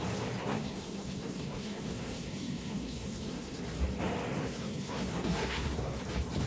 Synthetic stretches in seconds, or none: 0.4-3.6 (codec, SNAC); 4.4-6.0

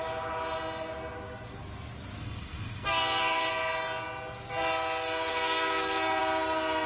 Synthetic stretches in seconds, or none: 2.2-3.5 (codec, SNAC); 5.3-6.2

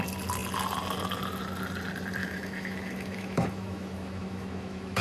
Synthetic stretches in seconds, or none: 2.2-5.0 (autoencoder, DAC-VAE)

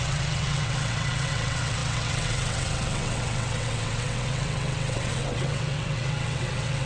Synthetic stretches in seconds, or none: 0.0-6.9 (vocoder, WaveNeXt)

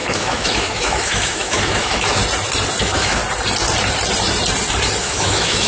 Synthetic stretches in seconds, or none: 0.0-2.2 (autoencoder, DAC-VAE); 2.8-3.2; 5.0-5.7

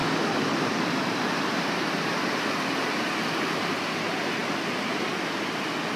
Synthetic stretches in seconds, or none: none